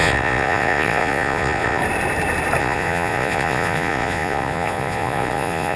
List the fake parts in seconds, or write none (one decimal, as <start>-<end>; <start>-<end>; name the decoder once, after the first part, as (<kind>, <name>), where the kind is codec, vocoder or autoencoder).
0.0-1.8 (vocoder, Vocos); 2.6-5.8